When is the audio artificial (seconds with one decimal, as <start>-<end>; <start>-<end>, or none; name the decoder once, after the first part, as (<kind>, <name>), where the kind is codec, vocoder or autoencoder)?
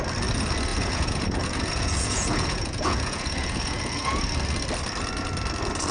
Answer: 0.7-4.2 (vocoder, Vocos)